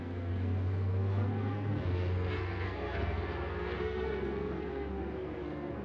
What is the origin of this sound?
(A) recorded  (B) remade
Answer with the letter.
B